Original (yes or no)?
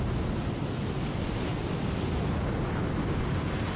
yes